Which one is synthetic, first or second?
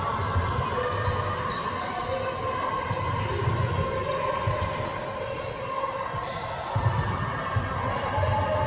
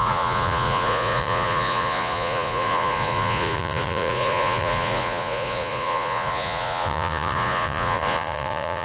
second